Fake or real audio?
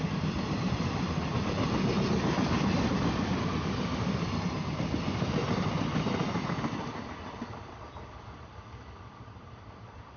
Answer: real